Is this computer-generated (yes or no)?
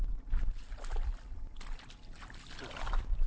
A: no